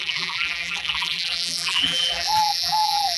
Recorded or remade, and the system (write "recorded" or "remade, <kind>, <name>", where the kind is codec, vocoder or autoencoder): remade, vocoder, BigVGAN v2